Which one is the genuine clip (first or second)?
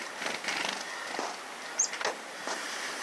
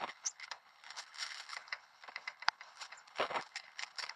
first